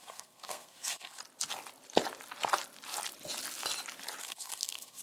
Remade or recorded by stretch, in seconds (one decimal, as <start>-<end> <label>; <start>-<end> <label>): 0.0-1.2 remade; 1.2-4.2 recorded; 4.2-5.0 remade